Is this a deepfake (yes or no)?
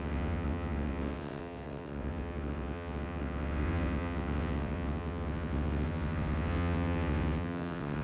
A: yes